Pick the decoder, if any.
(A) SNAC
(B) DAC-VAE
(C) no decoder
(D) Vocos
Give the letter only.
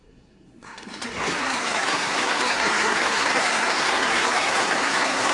A